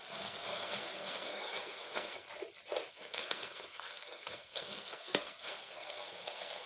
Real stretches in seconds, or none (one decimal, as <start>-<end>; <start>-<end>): 2.3-2.9